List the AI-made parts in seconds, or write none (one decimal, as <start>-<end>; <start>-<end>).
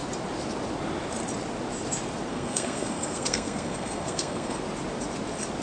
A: 2.3-4.6